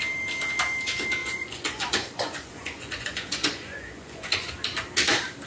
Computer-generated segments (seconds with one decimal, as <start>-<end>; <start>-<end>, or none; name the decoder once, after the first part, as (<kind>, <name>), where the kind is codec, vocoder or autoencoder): 1.2-4.5 (vocoder, Vocos)